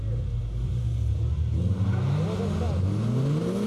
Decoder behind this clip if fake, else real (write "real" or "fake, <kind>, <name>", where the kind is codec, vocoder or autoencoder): real